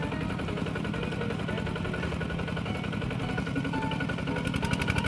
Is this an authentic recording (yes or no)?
yes